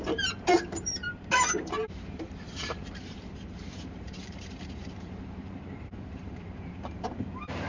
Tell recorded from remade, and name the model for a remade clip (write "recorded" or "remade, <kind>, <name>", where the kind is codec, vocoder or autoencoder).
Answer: remade, vocoder, BigVGAN v2